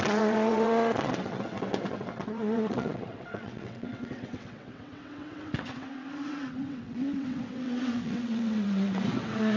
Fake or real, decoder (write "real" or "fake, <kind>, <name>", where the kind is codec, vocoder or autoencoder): fake, vocoder, WaveNeXt